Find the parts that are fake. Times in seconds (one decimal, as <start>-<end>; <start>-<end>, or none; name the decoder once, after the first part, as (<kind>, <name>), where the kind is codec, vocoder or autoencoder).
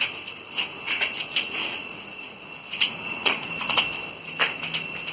0.7-3.8 (vocoder, Vocos)